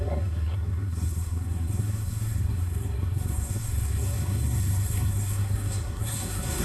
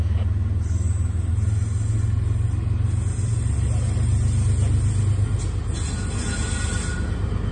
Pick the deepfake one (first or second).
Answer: first